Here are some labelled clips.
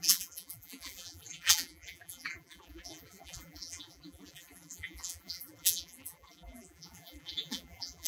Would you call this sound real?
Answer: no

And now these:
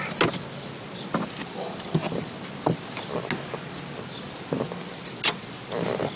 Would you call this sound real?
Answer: yes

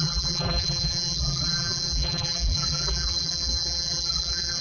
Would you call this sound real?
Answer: no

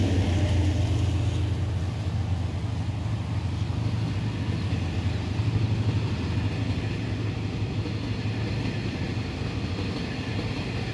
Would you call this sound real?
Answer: yes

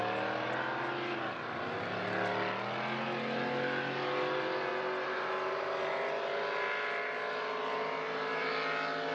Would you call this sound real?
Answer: yes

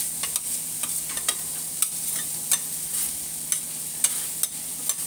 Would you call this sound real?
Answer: yes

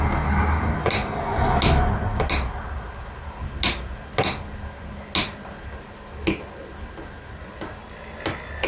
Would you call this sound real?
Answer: yes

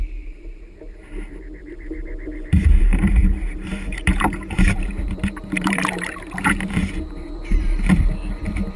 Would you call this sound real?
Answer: no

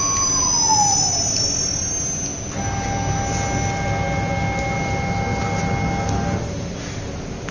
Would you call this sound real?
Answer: yes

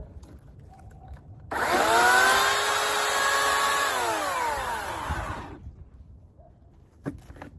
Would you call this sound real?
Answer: yes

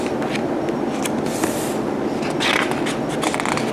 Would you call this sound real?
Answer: yes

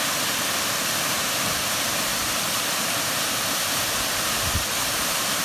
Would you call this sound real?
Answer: yes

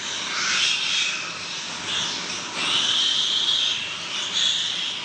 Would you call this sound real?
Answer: yes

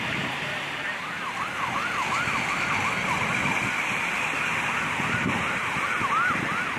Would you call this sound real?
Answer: yes